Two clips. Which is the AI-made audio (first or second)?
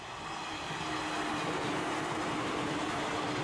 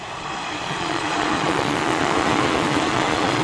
second